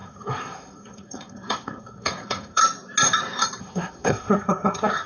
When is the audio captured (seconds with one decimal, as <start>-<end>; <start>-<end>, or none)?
2.6-3.6